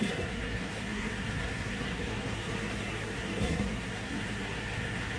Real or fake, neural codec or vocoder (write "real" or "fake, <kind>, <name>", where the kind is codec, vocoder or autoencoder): fake, codec, SNAC